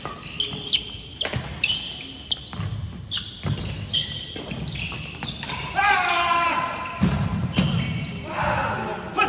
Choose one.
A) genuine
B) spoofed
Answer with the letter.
A